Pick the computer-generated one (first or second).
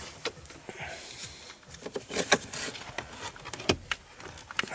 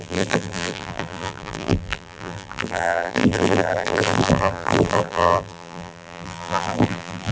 second